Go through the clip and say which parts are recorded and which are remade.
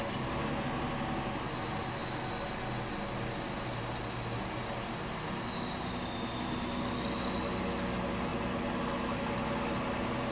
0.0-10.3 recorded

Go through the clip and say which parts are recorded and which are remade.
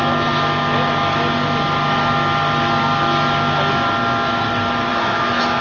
0.0-4.9 recorded; 4.9-5.6 remade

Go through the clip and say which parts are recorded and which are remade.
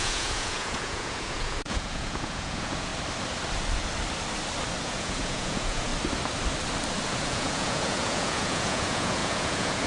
0.0-2.9 remade; 2.9-4.8 recorded; 4.8-5.9 remade; 5.9-7.1 recorded; 7.1-9.9 remade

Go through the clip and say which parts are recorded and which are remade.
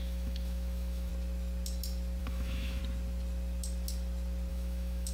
0.0-1.1 remade; 1.1-2.2 recorded; 2.2-2.8 remade; 2.8-4.5 recorded; 4.5-5.1 remade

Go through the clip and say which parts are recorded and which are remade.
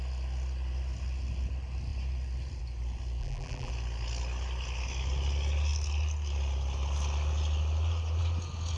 0.0-3.2 recorded; 3.2-3.7 remade; 3.7-8.8 recorded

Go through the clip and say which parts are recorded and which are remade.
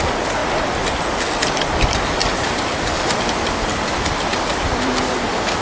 0.0-5.6 recorded